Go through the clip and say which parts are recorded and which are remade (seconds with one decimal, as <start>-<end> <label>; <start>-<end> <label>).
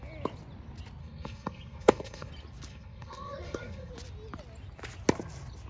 0.0-1.0 recorded; 1.0-2.3 remade; 2.3-2.7 recorded; 2.7-3.9 remade; 3.9-5.7 recorded